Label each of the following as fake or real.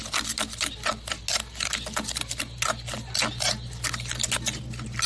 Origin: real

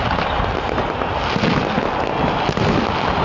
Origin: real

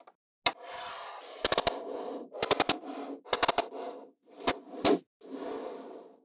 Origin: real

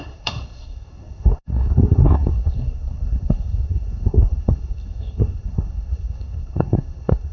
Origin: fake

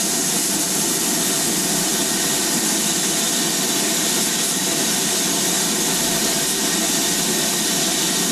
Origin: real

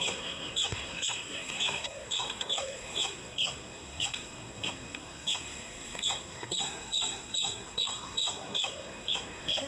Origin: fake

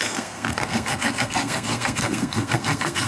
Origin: fake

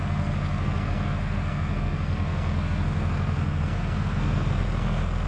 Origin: fake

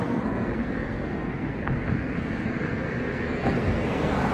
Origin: fake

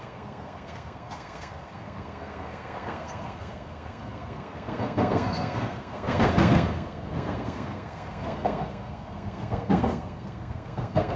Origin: fake